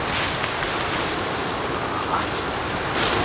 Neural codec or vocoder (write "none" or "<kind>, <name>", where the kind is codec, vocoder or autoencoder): none